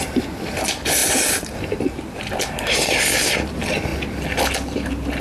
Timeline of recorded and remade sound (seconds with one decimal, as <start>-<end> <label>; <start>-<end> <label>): 0.0-1.0 remade; 1.0-2.4 recorded; 2.4-3.9 remade; 3.9-5.2 recorded

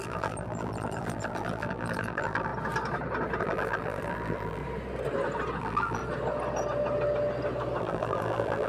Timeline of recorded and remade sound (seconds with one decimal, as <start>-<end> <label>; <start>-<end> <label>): 0.0-2.5 remade; 2.5-3.4 recorded; 3.4-4.6 remade; 4.6-5.6 recorded; 5.6-6.0 remade; 6.0-7.8 recorded; 7.8-8.7 remade

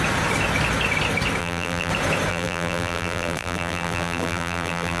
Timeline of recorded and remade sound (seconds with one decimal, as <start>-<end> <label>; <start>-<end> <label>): 0.0-1.4 recorded; 1.4-1.9 remade; 1.9-2.3 recorded; 2.3-5.0 remade

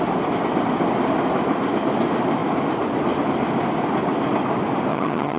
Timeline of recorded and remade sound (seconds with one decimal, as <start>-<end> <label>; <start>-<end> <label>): 0.0-4.9 recorded; 4.9-5.4 remade

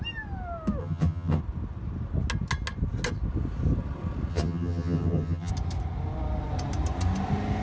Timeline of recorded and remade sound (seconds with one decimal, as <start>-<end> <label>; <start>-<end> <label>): 0.0-0.8 recorded; 0.8-1.4 remade; 1.4-4.3 recorded; 4.3-5.5 remade; 5.5-7.6 recorded

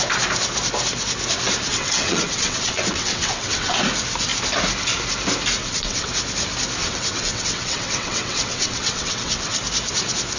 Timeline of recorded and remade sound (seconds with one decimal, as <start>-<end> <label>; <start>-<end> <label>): 0.0-1.7 recorded; 1.7-3.8 remade; 3.8-5.6 recorded; 5.6-6.1 remade; 6.1-6.8 recorded; 6.8-9.6 remade; 9.6-10.4 recorded